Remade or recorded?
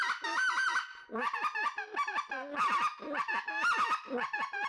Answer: recorded